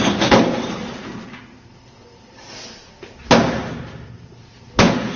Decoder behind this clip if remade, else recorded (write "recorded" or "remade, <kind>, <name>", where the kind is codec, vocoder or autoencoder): recorded